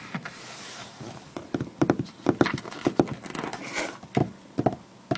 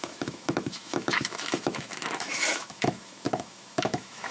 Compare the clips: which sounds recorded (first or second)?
first